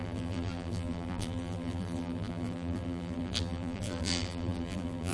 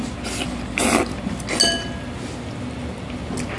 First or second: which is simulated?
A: first